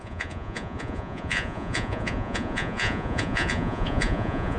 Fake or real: fake